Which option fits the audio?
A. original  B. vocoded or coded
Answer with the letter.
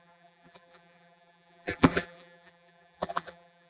B